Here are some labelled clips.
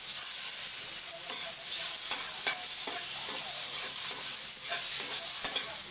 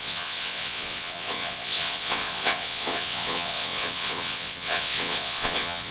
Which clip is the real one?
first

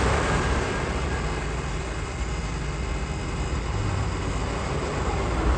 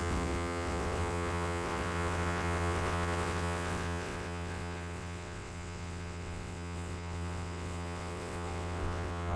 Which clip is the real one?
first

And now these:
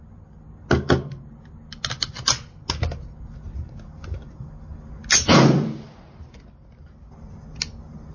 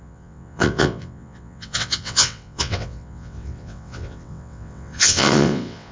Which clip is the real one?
first